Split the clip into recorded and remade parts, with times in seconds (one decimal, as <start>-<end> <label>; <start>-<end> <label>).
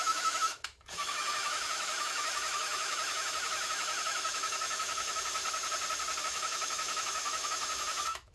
0.0-5.4 remade; 5.4-6.2 recorded; 6.2-8.3 remade